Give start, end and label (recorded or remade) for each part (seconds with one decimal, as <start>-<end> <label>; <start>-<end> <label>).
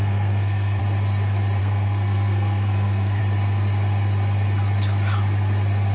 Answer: 0.0-0.8 remade; 0.8-1.6 recorded; 1.6-3.2 remade; 3.2-5.9 recorded